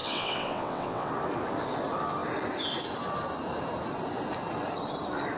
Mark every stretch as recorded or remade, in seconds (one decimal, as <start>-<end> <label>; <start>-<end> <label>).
0.0-1.1 remade; 1.1-5.4 recorded